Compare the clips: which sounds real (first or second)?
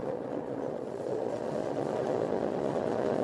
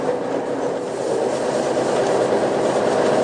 second